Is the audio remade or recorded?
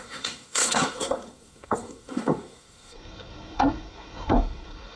remade